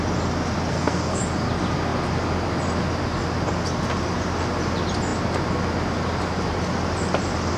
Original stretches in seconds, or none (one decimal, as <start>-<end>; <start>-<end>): 0.0-0.7; 1.2-7.6